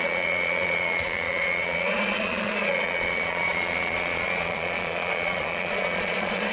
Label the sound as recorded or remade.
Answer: remade